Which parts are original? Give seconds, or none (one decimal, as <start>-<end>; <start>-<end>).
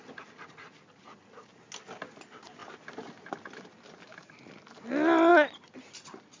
0.0-6.4